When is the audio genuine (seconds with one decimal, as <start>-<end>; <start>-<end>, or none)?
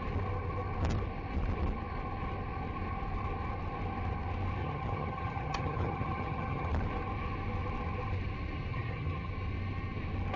0.0-4.6; 6.7-8.7; 9.3-10.4